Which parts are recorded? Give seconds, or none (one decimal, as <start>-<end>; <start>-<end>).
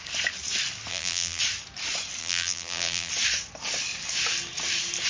0.0-0.9; 1.4-2.2; 3.1-5.1